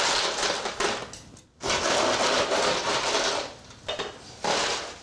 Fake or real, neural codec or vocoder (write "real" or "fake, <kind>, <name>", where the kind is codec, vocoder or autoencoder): real